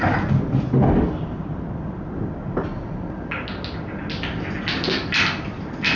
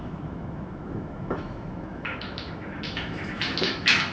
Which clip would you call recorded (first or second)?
first